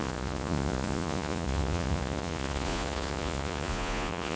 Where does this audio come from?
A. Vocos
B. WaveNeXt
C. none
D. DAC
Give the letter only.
A